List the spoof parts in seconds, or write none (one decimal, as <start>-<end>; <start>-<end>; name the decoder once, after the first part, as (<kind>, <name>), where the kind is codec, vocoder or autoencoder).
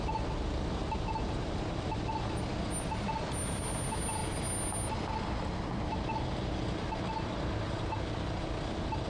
none